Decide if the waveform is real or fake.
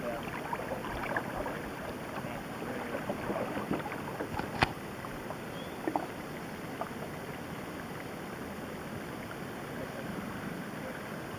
real